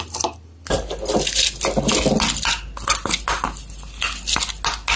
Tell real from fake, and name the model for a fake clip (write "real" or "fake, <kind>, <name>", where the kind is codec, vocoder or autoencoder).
real